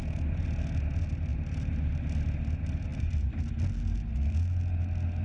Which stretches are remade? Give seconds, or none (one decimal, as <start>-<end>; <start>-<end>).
1.3-2.0; 2.9-3.6